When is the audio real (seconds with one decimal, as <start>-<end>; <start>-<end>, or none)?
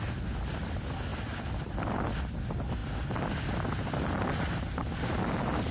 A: 0.0-5.7